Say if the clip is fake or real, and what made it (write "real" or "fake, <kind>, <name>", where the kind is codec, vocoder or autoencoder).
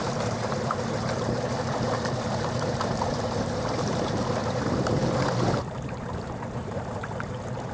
fake, vocoder, BigVGAN v2